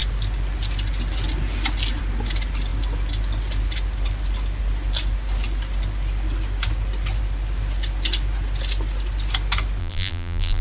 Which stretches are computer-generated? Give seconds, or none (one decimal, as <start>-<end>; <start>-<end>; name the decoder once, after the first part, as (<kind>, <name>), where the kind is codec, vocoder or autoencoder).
9.8-10.6 (vocoder, BigVGAN v2)